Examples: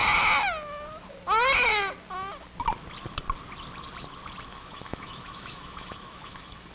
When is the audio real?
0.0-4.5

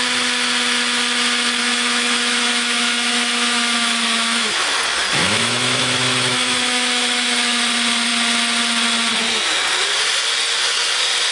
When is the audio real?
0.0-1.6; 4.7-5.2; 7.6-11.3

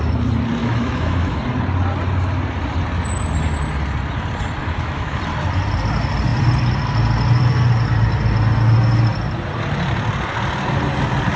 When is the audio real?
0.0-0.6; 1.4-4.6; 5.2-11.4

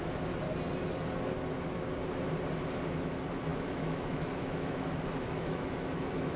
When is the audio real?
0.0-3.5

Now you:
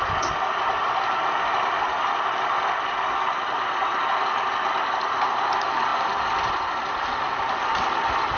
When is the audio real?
0.0-8.4

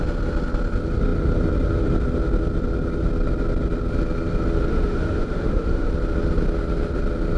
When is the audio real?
0.0-4.7; 5.9-7.4